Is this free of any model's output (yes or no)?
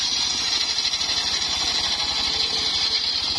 yes